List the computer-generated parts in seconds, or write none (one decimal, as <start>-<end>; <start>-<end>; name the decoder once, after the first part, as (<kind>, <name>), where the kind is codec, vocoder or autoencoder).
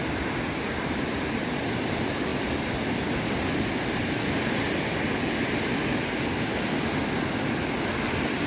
none